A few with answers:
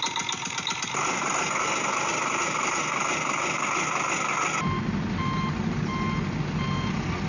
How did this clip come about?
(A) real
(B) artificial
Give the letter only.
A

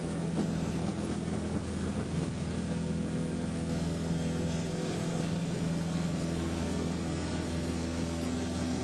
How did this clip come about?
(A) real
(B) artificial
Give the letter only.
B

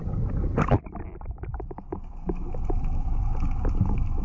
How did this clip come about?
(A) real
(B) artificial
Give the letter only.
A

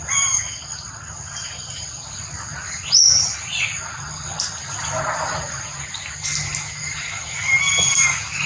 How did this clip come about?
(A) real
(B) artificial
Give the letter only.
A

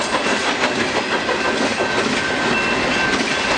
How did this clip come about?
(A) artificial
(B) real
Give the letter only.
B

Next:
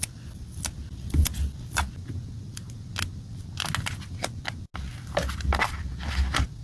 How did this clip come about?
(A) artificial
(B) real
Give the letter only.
B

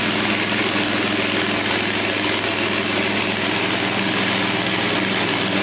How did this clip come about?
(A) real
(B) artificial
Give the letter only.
A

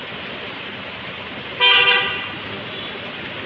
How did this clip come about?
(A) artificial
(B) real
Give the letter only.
B